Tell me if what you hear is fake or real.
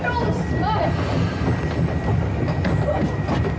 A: real